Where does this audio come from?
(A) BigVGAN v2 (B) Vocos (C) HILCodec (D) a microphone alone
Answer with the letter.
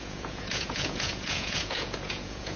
B